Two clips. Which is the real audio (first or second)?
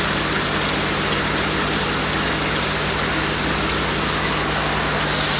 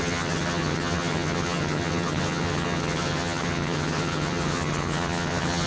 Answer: first